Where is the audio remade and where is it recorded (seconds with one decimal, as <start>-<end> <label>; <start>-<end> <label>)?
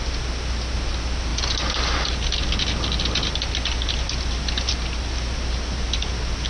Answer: 0.0-6.5 recorded